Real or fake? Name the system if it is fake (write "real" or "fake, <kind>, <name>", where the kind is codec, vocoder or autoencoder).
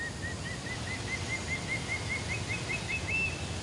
real